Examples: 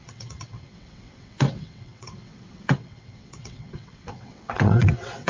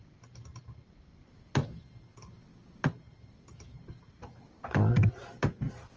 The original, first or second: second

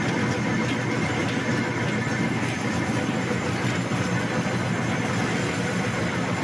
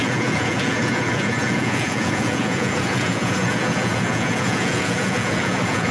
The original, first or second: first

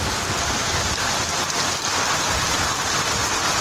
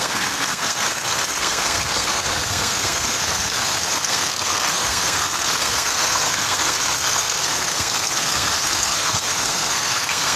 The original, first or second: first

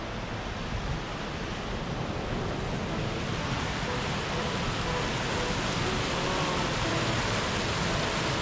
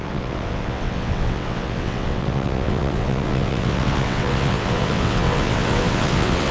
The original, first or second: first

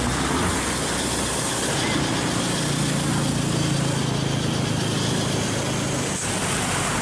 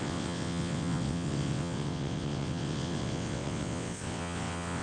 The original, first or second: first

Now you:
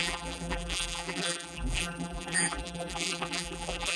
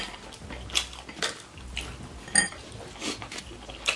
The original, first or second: second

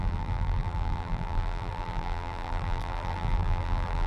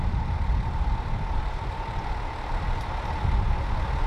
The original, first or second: second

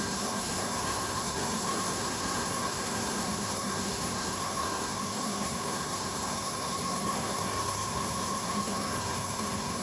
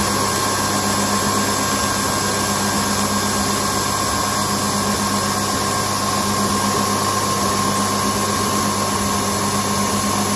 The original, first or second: second